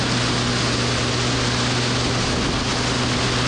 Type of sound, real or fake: real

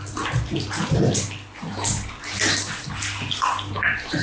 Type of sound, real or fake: real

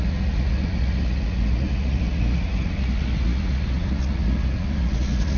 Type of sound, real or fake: fake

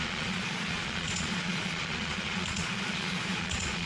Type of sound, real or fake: fake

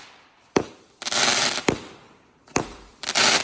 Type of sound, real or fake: fake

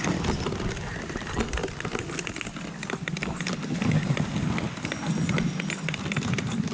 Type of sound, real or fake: real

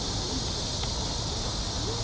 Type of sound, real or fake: real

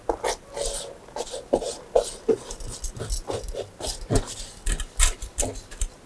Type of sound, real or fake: real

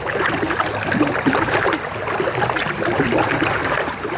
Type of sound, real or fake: real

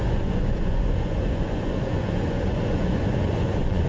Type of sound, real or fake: fake